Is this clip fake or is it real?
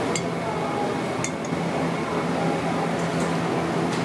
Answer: real